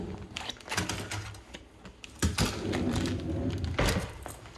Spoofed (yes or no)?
no